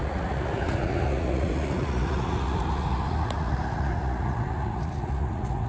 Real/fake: fake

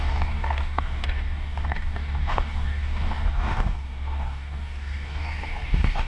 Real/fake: fake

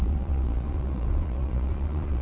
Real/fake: fake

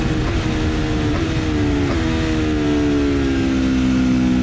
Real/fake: real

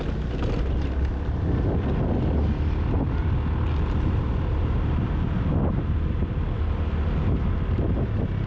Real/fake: real